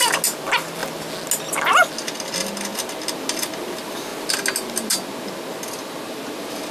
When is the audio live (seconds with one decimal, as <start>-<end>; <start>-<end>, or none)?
0.0-6.7